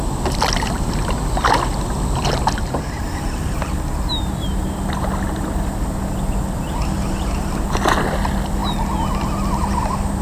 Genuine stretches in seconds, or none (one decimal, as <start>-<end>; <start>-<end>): 0.0-10.2